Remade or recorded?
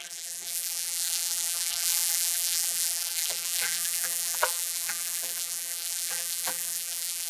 remade